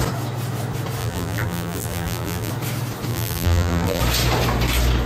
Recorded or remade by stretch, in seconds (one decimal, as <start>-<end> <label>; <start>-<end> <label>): 0.0-1.0 recorded; 1.0-2.5 remade; 2.5-3.1 recorded; 3.1-4.0 remade; 4.0-5.1 recorded

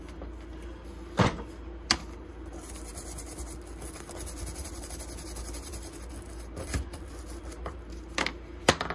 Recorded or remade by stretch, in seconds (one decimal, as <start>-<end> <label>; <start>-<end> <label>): 0.0-8.9 recorded

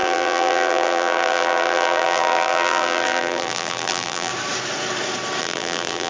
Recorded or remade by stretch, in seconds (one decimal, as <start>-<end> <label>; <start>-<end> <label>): 0.0-4.3 remade; 4.3-5.4 recorded; 5.4-6.1 remade

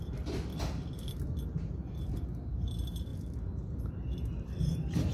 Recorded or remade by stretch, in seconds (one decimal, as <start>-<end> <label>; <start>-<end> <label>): 0.0-0.5 remade; 0.5-1.6 recorded; 1.6-3.1 remade; 3.1-3.9 recorded; 3.9-5.1 remade

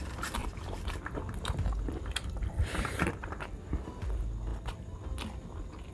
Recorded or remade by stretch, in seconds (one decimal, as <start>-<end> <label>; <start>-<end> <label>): 0.0-0.4 recorded; 0.4-3.9 remade; 3.9-4.5 recorded; 4.5-5.0 remade; 5.0-5.9 recorded

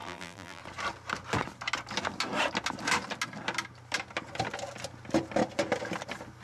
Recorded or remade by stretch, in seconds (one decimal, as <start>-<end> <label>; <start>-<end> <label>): 0.0-0.6 remade; 0.6-6.4 recorded